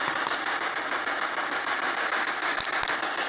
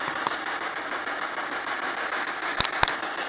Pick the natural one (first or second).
second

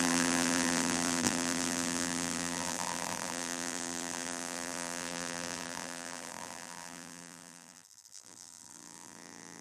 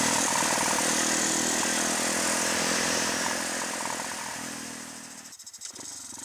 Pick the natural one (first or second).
second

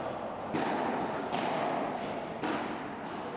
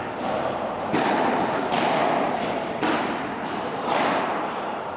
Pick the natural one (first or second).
first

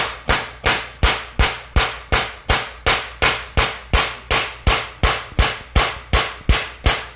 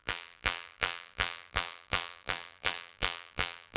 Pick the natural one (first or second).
first